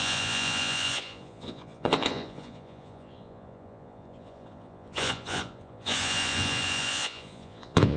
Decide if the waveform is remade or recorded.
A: remade